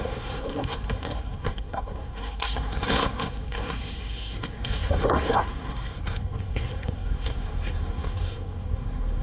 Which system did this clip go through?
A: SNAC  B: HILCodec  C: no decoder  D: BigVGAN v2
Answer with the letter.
A